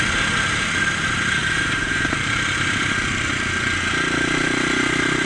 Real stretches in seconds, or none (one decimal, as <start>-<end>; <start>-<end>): 0.0-1.4; 3.3-5.3

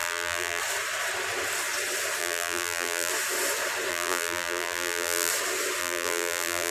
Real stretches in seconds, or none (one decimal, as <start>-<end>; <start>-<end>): 0.6-2.2; 3.1-3.9; 5.3-5.8

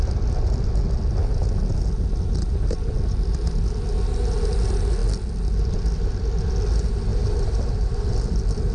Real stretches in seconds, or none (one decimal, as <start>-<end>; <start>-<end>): 0.0-7.1; 8.1-8.7

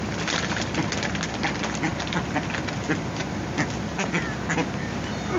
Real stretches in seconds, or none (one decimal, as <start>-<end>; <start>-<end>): 0.0-5.4

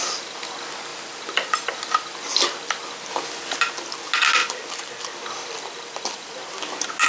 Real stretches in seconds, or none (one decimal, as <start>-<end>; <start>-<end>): 0.0-3.1; 3.6-4.4; 6.5-7.1

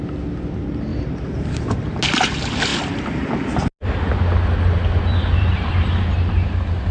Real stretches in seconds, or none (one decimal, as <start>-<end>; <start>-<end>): 0.0-0.9; 1.9-5.1; 5.7-6.9

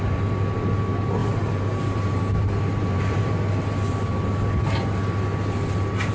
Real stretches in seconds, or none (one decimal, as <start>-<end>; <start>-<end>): 0.0-1.2; 2.3-2.8; 3.3-6.1

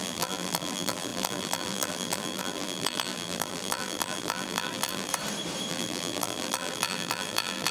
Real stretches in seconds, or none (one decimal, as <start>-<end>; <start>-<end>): 5.1-5.7